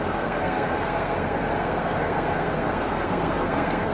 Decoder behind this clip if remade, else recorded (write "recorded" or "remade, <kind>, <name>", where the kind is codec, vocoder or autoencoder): remade, codec, SNAC